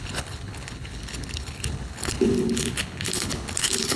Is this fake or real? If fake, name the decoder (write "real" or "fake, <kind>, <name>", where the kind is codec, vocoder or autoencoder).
fake, codec, HILCodec